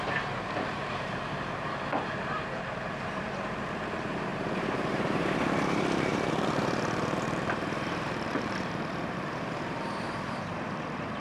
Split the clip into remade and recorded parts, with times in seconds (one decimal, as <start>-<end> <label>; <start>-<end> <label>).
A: 0.0-11.2 remade